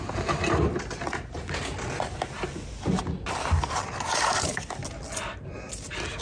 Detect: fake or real real